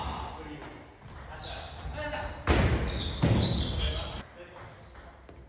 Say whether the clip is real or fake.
real